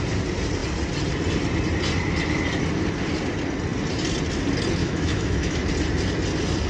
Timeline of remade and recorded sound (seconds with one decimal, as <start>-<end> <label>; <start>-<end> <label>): 0.0-4.8 recorded; 4.8-5.6 remade; 5.6-6.7 recorded